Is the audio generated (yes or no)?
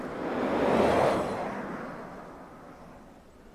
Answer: no